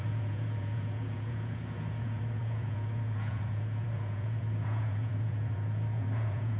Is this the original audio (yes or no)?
no